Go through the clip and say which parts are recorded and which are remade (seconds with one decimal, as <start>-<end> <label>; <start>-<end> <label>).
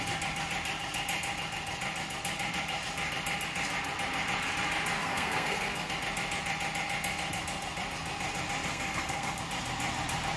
0.0-5.0 recorded; 5.0-5.9 remade; 5.9-8.7 recorded; 8.7-9.4 remade; 9.4-10.4 recorded